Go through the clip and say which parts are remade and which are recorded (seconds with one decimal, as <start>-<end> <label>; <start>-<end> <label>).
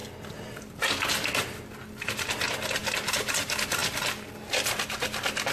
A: 0.0-2.8 recorded; 2.8-3.3 remade; 3.3-5.5 recorded